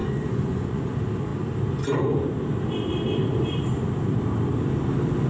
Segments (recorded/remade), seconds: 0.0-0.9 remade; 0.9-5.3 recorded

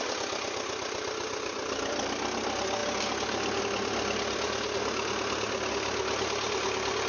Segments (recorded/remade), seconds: 0.0-7.1 recorded

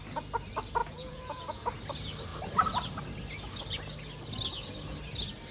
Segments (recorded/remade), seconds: 0.0-0.8 recorded; 0.8-1.7 remade; 1.7-5.5 recorded

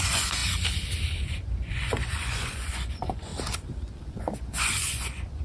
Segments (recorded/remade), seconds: 0.0-0.4 remade; 0.4-1.7 recorded; 1.7-3.3 remade; 3.3-4.0 recorded; 4.0-5.4 remade

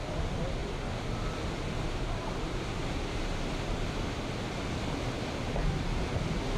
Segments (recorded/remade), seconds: 0.0-6.6 recorded

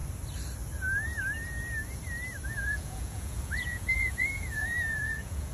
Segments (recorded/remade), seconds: 0.0-2.5 recorded; 2.5-5.5 remade

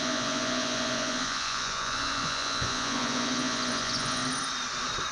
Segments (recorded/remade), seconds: 0.0-4.2 remade; 4.2-5.1 recorded